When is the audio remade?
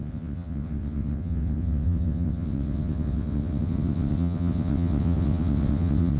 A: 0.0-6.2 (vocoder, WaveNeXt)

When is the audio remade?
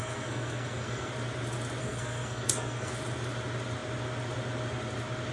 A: 0.0-1.1 (codec, SNAC); 1.8-2.9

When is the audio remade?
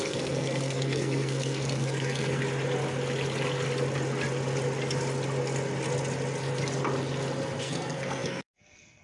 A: 0.0-2.4 (codec, SNAC); 7.6-9.0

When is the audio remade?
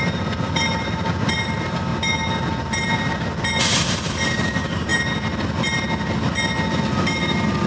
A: 0.0-1.9 (vocoder, BigVGAN v2); 2.6-4.9; 7.0-7.7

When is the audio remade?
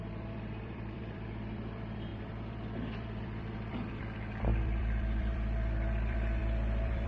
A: 0.0-7.1 (vocoder, BigVGAN v2)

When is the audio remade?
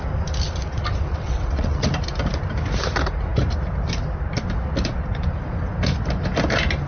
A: 1.1-1.9 (vocoder, WaveNeXt)